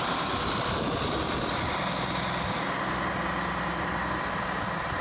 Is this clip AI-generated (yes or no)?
no